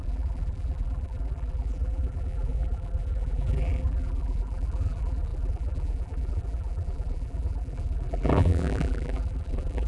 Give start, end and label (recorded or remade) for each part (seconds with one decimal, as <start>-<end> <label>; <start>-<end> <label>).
0.0-9.9 remade